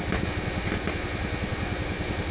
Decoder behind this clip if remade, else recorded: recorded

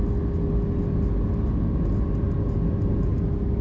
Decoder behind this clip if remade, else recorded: recorded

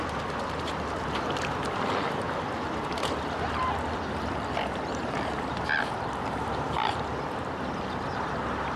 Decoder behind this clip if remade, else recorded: remade, vocoder, BigVGAN v2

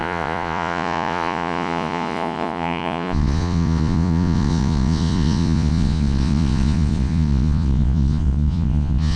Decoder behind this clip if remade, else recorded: remade, vocoder, Vocos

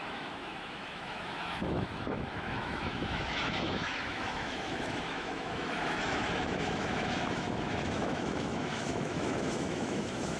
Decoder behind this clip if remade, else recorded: remade, autoencoder, DAC-VAE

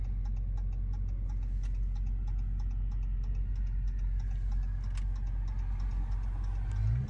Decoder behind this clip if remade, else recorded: recorded